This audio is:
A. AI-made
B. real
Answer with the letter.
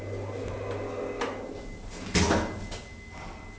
B